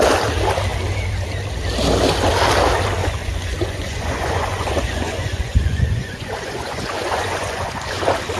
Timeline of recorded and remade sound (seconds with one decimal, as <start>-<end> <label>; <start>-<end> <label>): 0.0-3.0 recorded; 3.0-8.0 remade; 8.0-8.4 recorded